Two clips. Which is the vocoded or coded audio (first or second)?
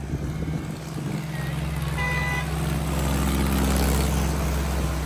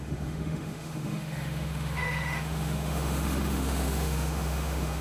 second